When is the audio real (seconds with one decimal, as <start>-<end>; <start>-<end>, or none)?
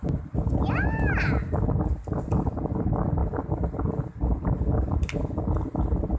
0.0-6.2